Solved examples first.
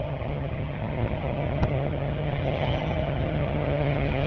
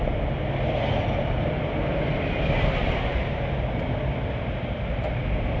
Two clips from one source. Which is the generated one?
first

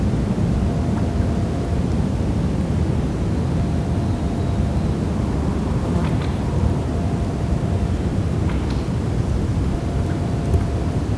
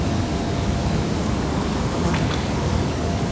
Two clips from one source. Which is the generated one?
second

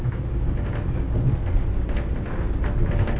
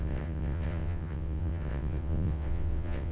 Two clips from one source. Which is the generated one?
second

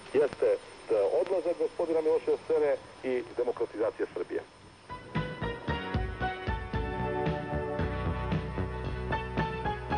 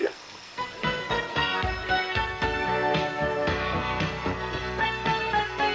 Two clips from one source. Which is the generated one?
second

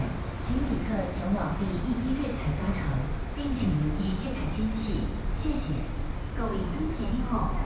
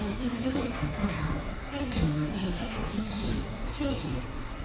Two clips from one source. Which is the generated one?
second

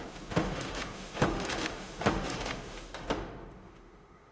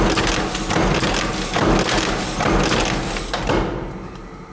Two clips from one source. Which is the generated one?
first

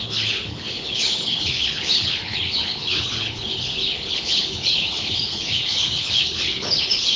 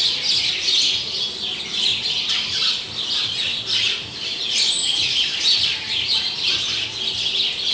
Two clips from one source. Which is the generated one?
first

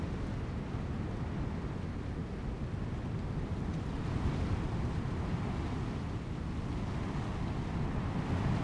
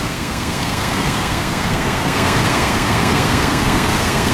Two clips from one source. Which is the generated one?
second